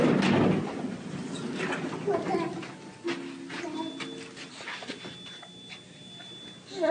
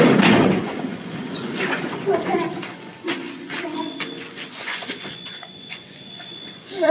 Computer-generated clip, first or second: second